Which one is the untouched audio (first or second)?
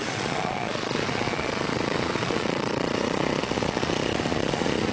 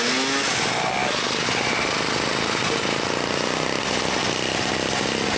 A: second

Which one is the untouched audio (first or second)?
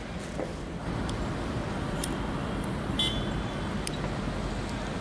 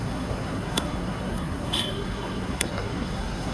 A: first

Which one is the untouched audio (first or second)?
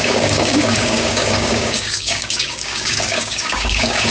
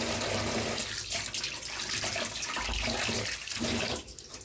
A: second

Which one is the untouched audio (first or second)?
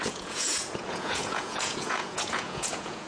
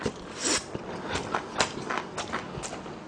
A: second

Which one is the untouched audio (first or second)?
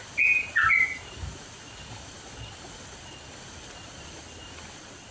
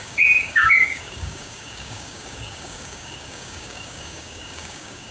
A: first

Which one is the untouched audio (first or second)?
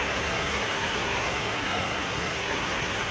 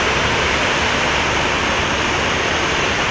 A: second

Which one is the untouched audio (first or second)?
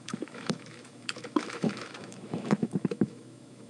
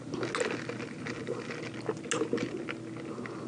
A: second